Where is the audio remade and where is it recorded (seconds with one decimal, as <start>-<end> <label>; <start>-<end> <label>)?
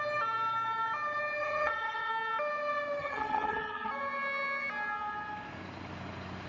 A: 0.0-1.4 recorded; 1.4-2.1 remade; 2.1-3.0 recorded; 3.0-3.9 remade; 3.9-6.5 recorded